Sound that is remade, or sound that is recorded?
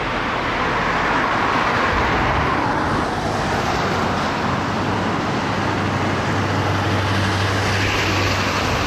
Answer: recorded